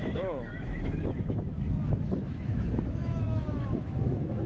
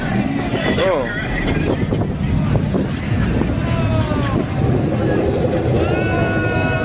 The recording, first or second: second